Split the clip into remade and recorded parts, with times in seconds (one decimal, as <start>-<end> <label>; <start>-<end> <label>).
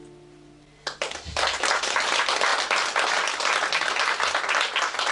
0.0-5.1 recorded